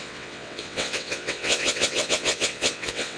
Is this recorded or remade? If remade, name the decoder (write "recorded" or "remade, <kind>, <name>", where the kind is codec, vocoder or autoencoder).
remade, vocoder, WaveNeXt